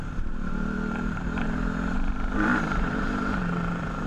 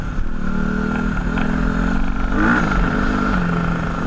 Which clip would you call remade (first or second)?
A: first